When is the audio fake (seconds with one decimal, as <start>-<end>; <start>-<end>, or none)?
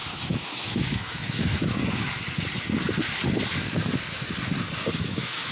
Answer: 0.0-1.8; 5.0-5.5